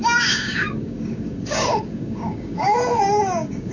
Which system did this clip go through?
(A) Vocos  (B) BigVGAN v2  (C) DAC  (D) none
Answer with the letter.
C